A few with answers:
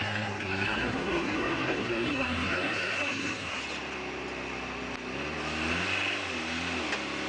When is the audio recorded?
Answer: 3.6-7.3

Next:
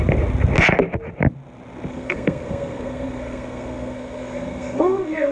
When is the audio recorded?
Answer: 0.0-1.9

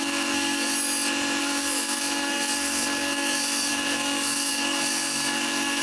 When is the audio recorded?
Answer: 0.7-1.4

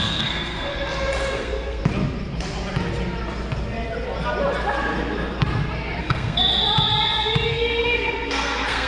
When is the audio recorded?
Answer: 0.7-1.3; 1.8-6.0; 6.4-7.5

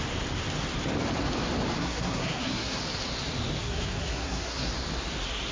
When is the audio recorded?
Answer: 0.0-1.8; 2.8-3.6; 4.7-5.5